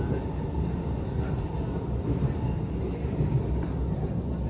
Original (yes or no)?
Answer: yes